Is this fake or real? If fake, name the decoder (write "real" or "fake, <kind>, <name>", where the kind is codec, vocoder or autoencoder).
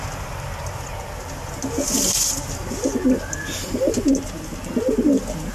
real